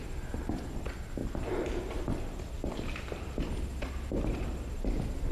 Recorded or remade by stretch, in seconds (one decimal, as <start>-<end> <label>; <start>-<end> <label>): 0.0-5.3 recorded